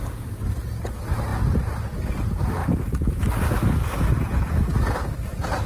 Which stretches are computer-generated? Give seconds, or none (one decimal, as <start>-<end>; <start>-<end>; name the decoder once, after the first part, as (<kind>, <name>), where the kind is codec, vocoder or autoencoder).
none